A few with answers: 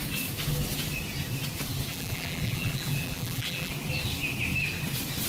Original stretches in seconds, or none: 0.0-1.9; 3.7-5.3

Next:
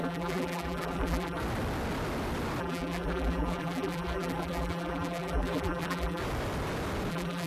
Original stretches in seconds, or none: 1.4-2.6; 6.2-7.1